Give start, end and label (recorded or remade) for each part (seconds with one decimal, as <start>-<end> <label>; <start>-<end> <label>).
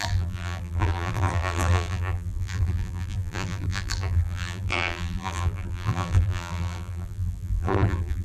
0.0-8.2 remade